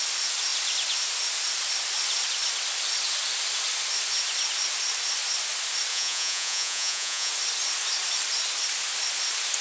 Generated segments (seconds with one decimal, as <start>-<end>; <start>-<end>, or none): 5.9-7.3